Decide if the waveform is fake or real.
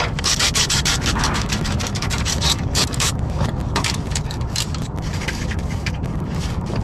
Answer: fake